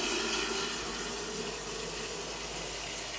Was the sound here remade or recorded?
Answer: recorded